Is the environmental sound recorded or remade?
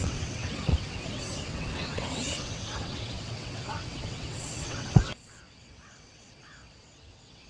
remade